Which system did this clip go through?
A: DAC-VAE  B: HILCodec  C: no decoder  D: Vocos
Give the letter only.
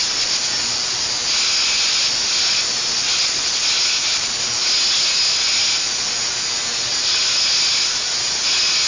C